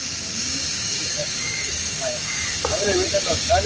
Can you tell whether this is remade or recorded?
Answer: remade